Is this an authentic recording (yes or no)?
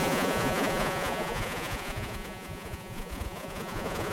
no